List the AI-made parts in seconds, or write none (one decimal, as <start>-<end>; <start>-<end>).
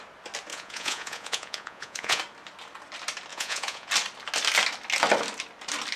0.5-2.2; 3.3-3.9